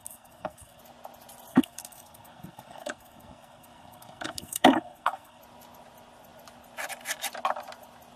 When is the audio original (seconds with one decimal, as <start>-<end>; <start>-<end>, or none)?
0.8-1.5; 5.4-8.2